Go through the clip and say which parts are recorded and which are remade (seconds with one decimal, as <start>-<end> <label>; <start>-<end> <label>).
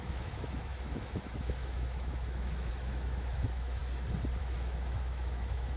0.0-3.8 remade; 3.8-4.4 recorded; 4.4-5.8 remade